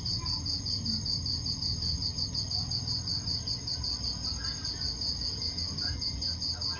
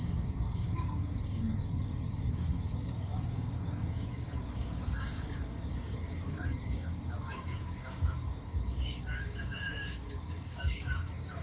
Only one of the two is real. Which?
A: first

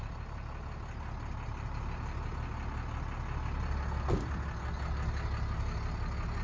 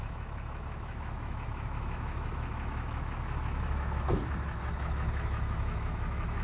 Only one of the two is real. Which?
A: first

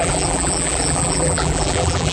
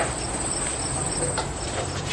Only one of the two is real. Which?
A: second